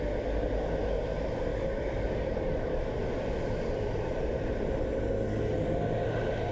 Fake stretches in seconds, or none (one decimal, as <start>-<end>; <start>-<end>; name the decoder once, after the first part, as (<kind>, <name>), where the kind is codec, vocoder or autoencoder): 1.5-3.1 (codec, DAC)